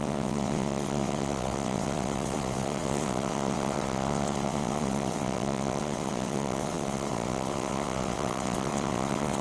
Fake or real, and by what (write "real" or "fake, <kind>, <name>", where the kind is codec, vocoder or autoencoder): fake, vocoder, WaveNeXt